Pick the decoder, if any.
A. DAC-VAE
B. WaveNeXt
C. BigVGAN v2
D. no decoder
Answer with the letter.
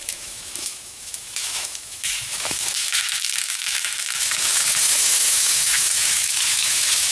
A